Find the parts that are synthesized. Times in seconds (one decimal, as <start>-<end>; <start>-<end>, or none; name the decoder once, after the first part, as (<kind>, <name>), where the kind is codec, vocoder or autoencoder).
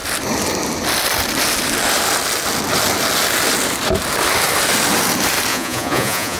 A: 5.5-6.4 (vocoder, Vocos)